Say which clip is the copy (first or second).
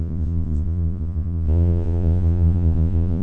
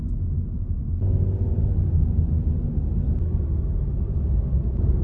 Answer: first